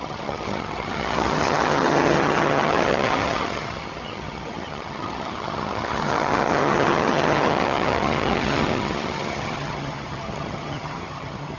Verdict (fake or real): fake